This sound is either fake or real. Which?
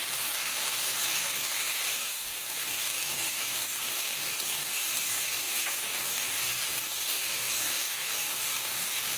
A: fake